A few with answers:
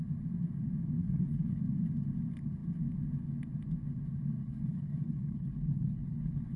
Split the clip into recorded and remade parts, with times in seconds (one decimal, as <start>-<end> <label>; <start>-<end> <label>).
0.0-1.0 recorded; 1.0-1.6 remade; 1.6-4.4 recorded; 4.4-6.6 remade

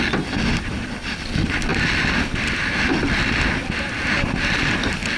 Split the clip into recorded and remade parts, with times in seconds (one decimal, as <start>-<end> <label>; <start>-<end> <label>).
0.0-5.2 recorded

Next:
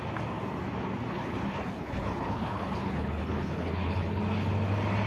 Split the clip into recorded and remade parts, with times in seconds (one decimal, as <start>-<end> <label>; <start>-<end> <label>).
0.0-1.1 recorded; 1.1-4.2 remade; 4.2-5.1 recorded

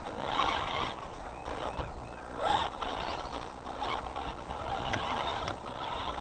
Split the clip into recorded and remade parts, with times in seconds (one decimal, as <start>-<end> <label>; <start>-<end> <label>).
0.0-6.2 remade

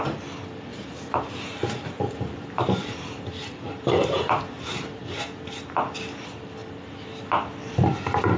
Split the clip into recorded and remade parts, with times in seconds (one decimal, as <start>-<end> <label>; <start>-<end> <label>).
0.0-0.7 recorded; 0.7-5.0 remade; 5.0-8.4 recorded

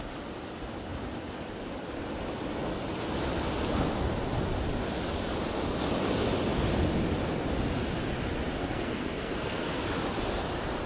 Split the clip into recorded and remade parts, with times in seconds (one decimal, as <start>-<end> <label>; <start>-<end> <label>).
0.0-8.6 recorded; 8.6-9.8 remade; 9.8-10.9 recorded

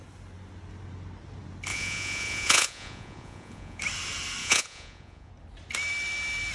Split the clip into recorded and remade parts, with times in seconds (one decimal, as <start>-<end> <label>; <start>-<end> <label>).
0.0-1.7 recorded; 1.7-3.8 remade; 3.8-4.4 recorded; 4.4-5.3 remade; 5.3-6.5 recorded